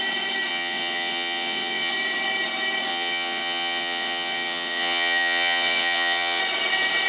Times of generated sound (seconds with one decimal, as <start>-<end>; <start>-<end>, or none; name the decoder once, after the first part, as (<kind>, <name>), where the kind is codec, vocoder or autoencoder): 0.5-1.9 (vocoder, WaveNeXt); 2.9-6.4